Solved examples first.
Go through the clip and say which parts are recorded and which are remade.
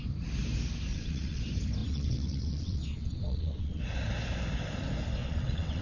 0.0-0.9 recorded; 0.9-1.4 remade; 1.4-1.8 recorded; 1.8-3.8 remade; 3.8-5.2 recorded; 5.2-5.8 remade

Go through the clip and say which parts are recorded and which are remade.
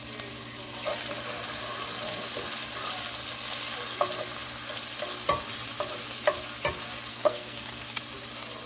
0.0-7.1 recorded; 7.1-8.0 remade; 8.0-8.7 recorded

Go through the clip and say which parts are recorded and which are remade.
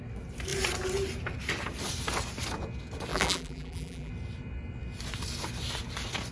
0.0-3.1 recorded; 3.1-4.1 remade; 4.1-6.3 recorded